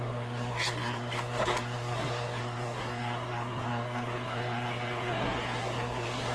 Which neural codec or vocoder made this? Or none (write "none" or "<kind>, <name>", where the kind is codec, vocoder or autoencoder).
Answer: codec, SNAC